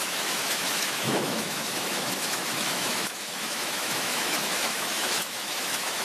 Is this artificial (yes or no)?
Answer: yes